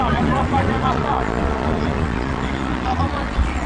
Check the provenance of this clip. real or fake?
fake